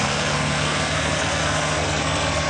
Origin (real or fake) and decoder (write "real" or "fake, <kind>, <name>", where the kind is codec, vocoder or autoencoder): fake, codec, SNAC